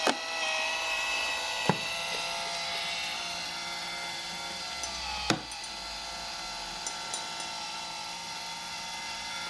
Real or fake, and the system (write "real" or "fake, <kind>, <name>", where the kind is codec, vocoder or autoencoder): real